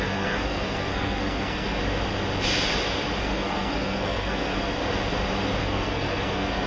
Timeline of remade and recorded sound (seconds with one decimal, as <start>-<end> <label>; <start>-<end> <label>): 0.0-1.8 remade; 1.8-3.2 recorded; 3.2-4.8 remade; 4.8-5.6 recorded; 5.6-6.7 remade